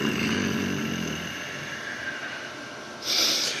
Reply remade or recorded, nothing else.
recorded